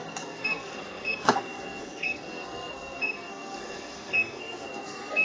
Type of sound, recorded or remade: remade